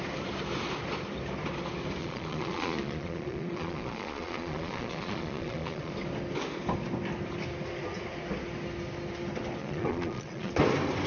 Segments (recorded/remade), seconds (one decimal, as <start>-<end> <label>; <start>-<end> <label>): 0.0-2.0 recorded; 2.0-5.9 remade; 5.9-9.6 recorded; 9.6-10.5 remade; 10.5-11.1 recorded